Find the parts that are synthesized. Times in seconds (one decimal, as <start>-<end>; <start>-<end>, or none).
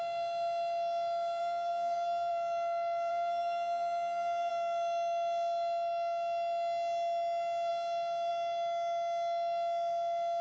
1.4-2.3; 3.1-4.5